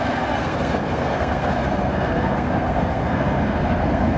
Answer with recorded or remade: remade